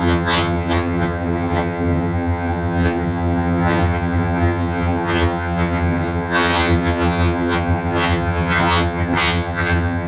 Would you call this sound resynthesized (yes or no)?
yes